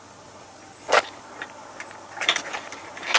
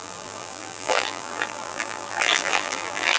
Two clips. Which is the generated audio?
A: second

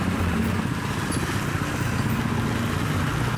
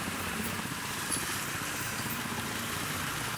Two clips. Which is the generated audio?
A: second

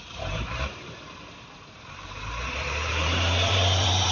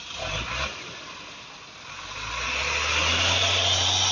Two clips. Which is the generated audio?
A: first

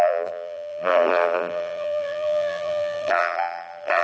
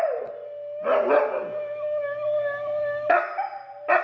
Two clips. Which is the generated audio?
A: first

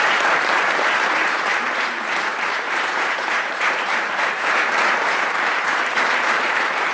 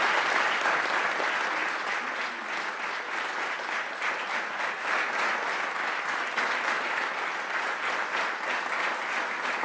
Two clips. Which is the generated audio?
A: first